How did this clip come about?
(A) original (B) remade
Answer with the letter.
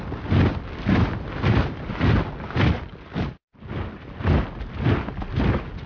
A